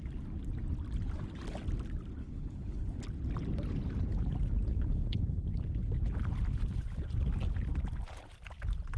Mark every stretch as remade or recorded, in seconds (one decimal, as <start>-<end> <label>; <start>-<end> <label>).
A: 0.0-2.2 recorded; 2.2-3.0 remade; 3.0-4.7 recorded; 4.7-5.6 remade; 5.6-9.0 recorded